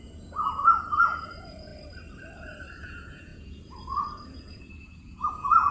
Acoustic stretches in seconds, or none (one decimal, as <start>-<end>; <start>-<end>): 1.7-2.7